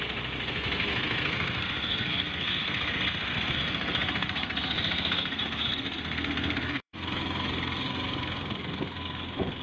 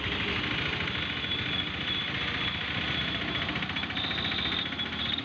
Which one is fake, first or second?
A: first